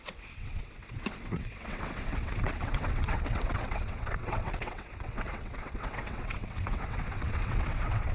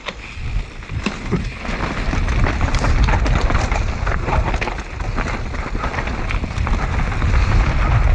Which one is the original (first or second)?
second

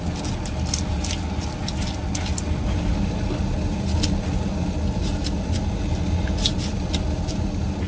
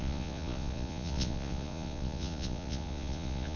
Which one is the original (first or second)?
first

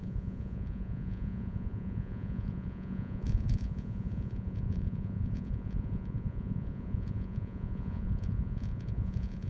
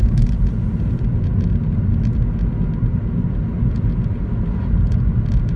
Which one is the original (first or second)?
second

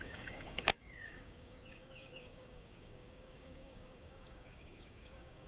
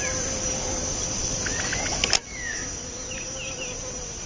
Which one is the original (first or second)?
second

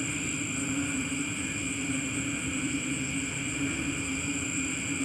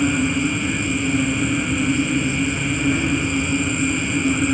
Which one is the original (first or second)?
second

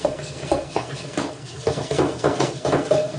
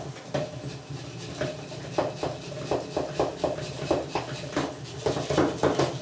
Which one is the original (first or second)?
second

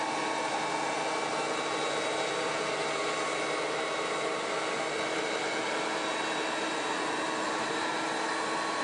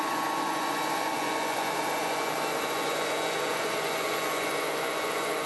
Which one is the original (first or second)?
first